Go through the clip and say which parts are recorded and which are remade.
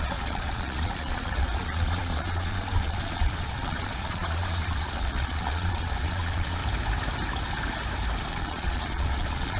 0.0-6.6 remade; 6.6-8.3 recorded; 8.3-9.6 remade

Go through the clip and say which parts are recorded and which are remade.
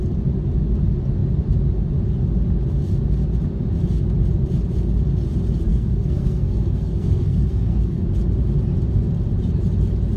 0.0-5.7 recorded; 5.7-8.0 remade; 8.0-10.2 recorded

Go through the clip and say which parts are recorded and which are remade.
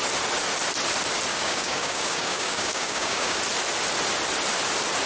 0.0-1.3 recorded; 1.3-3.4 remade; 3.4-5.1 recorded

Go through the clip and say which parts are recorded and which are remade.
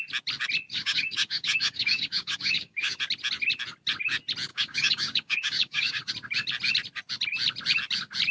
0.0-0.7 recorded; 0.7-3.0 remade; 3.0-4.5 recorded; 4.5-6.1 remade; 6.1-8.3 recorded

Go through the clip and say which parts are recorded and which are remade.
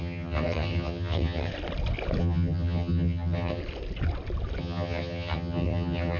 0.0-1.5 remade; 1.5-2.2 recorded; 2.2-3.6 remade; 3.6-4.6 recorded; 4.6-6.2 remade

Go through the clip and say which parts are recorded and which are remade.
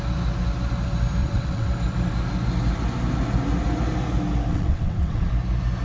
0.0-1.2 recorded; 1.2-1.7 remade; 1.7-4.5 recorded; 4.5-5.3 remade; 5.3-5.8 recorded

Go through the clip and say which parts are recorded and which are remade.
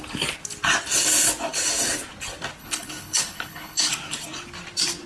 0.0-2.6 recorded; 2.6-3.9 remade; 3.9-5.1 recorded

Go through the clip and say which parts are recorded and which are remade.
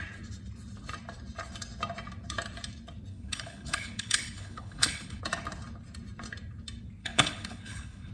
0.0-3.1 recorded; 3.1-5.2 remade; 5.2-7.0 recorded; 7.0-8.1 remade